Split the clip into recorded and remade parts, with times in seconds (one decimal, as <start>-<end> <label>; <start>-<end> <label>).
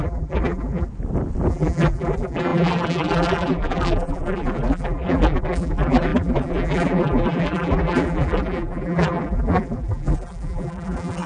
0.0-0.9 remade; 0.9-1.5 recorded; 1.5-11.3 remade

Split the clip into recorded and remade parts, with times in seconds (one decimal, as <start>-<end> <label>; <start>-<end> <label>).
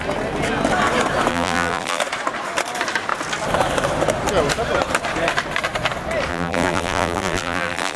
0.0-1.3 recorded; 1.3-2.0 remade; 2.0-6.3 recorded; 6.3-8.0 remade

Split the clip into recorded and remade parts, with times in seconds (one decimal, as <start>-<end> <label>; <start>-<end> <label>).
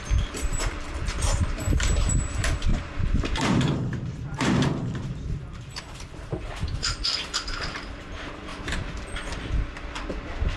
0.0-8.5 remade; 8.5-10.6 recorded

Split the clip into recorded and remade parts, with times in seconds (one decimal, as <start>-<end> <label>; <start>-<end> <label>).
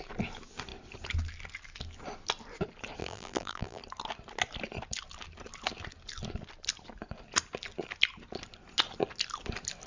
0.0-3.0 recorded; 3.0-3.8 remade; 3.8-9.9 recorded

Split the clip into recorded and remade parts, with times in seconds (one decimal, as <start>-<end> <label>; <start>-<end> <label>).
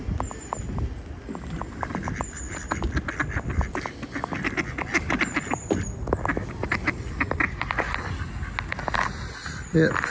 0.0-5.6 recorded; 5.6-8.2 remade; 8.2-10.1 recorded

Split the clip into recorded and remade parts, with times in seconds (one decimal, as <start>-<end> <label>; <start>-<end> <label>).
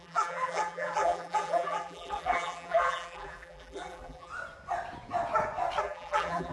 0.0-4.3 remade; 4.3-5.8 recorded; 5.8-6.5 remade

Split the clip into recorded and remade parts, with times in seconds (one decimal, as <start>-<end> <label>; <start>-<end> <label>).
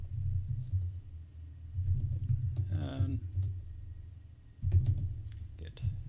0.0-2.9 recorded; 2.9-6.1 remade